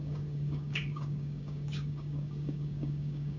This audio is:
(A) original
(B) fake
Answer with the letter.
B